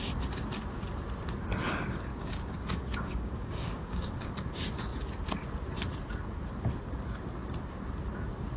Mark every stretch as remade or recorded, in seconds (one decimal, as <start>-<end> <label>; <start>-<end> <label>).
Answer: 0.0-2.1 recorded; 2.1-4.3 remade; 4.3-8.6 recorded